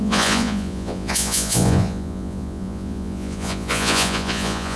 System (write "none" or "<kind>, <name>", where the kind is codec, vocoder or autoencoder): vocoder, Vocos